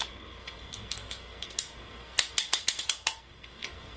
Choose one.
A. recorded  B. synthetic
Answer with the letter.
B